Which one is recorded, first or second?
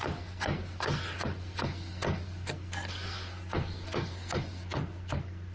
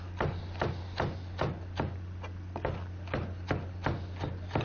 second